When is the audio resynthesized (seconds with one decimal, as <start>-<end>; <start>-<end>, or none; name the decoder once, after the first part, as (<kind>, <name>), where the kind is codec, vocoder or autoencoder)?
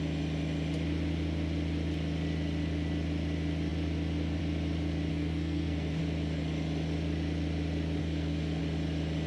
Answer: 5.1-6.0 (codec, SNAC); 8.0-8.6